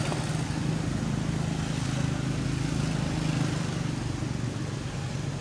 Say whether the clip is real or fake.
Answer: real